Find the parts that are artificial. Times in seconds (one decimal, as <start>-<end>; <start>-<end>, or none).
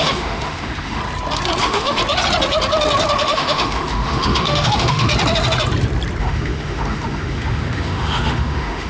0.0-1.0; 1.6-2.0; 3.2-5.1; 6.2-8.9